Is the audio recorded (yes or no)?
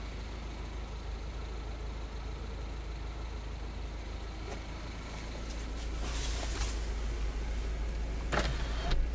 yes